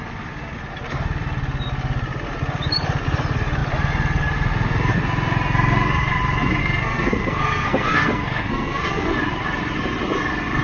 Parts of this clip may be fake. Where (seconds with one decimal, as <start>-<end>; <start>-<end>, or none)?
6.6-9.2